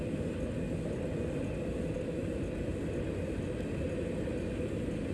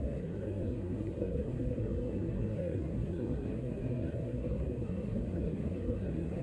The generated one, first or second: second